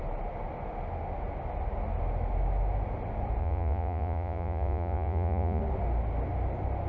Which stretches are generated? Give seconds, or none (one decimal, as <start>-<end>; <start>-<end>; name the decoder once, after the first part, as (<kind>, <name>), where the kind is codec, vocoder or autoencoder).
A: 3.4-5.6 (vocoder, Vocos)